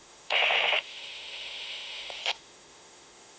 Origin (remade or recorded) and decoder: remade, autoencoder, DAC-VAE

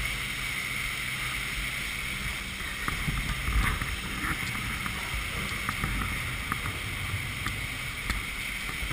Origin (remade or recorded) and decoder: recorded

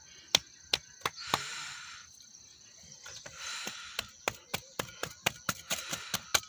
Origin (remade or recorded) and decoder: recorded